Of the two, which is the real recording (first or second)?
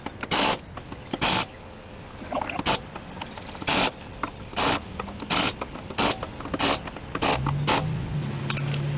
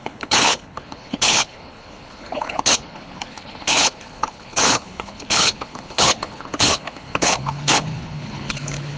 first